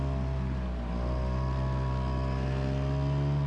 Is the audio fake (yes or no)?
no